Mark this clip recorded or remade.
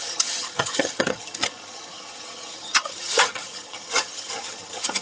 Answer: remade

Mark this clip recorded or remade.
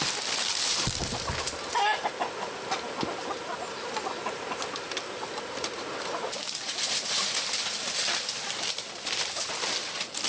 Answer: recorded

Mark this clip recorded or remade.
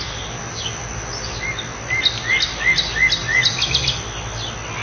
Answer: recorded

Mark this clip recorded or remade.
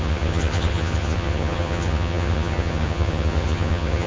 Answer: remade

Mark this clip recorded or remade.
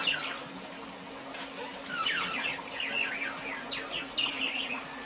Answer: recorded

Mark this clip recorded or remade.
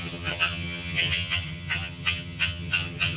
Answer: remade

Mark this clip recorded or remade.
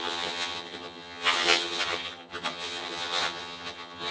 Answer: remade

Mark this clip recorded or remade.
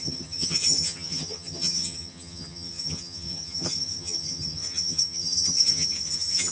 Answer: remade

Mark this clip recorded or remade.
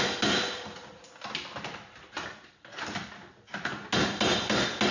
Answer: recorded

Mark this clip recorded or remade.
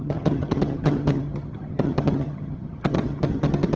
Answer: remade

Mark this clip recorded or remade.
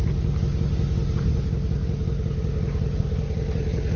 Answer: recorded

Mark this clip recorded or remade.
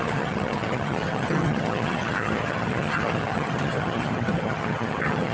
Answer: remade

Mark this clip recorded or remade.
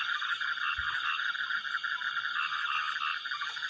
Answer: recorded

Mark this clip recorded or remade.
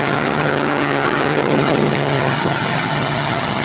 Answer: remade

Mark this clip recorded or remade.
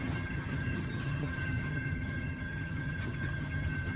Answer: remade